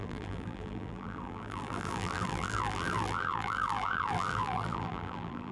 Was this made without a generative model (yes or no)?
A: no